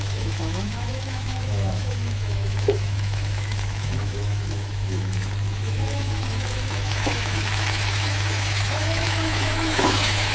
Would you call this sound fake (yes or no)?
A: yes